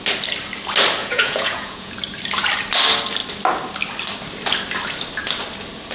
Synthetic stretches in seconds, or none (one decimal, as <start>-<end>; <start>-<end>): 1.0-1.9